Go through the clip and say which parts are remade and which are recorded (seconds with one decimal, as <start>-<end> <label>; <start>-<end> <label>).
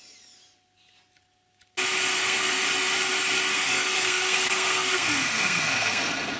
0.0-2.1 recorded; 2.1-2.6 remade; 2.6-3.5 recorded; 3.5-6.4 remade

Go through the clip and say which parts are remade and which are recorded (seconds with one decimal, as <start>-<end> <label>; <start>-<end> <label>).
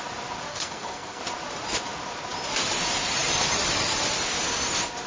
0.0-0.5 recorded; 0.5-1.2 remade; 1.2-5.1 recorded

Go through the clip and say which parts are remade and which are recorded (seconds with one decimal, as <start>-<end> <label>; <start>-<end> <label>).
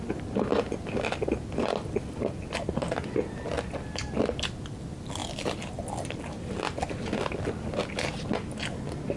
0.0-9.2 recorded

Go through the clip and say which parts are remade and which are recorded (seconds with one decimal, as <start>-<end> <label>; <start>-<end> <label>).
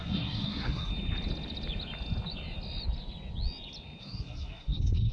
0.0-0.9 remade; 0.9-4.0 recorded; 4.0-5.1 remade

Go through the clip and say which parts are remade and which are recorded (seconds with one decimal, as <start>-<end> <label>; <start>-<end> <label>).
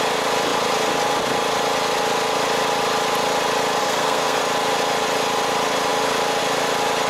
0.0-3.8 recorded; 3.8-4.4 remade; 4.4-7.1 recorded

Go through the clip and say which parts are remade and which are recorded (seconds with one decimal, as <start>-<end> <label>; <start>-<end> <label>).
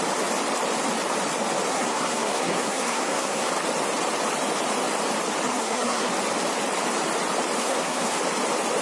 0.0-1.7 recorded; 1.7-3.5 remade; 3.5-5.5 recorded; 5.5-6.1 remade; 6.1-7.6 recorded; 7.6-8.2 remade; 8.2-8.8 recorded